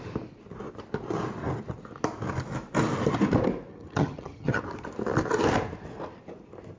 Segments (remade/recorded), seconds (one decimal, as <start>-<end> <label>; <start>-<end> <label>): 0.0-3.7 recorded; 3.7-4.6 remade; 4.6-6.8 recorded